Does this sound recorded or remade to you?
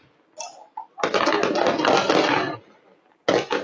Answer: recorded